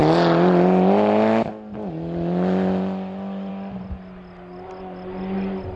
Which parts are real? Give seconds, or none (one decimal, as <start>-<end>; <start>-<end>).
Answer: 0.0-5.8